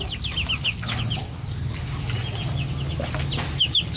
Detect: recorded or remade recorded